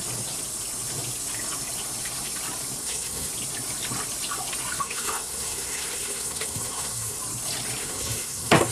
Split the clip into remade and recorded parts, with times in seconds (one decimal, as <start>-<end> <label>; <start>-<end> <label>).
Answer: 0.0-2.8 recorded; 2.8-3.3 remade; 3.3-4.8 recorded; 4.8-7.2 remade; 7.2-7.8 recorded; 7.8-8.7 remade